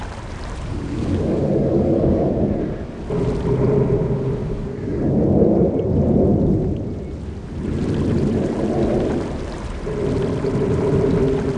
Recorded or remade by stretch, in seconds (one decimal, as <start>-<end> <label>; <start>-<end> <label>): 0.0-0.7 recorded; 0.7-2.3 remade; 2.3-4.4 recorded; 4.4-5.0 remade; 5.0-11.6 recorded